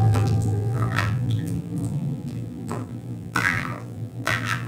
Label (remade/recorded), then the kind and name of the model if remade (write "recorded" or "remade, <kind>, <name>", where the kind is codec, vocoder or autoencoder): remade, vocoder, BigVGAN v2